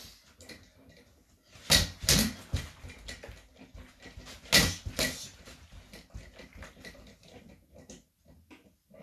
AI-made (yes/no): no